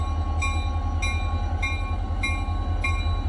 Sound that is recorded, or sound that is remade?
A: recorded